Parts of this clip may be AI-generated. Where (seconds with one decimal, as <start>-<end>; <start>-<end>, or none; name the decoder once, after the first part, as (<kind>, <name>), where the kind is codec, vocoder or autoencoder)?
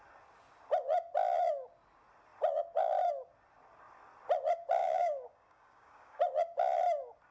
4.8-6.2 (codec, DAC)